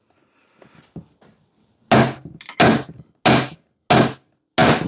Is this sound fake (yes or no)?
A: no